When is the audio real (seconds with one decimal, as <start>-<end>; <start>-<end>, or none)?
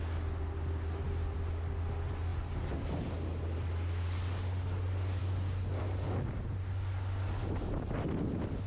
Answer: 0.0-8.7